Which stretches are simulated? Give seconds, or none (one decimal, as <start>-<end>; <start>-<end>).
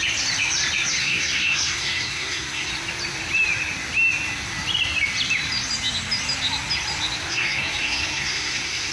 1.0-2.7; 7.3-8.9